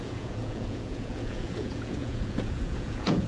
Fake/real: fake